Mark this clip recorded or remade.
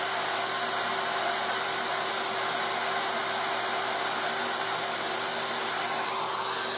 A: recorded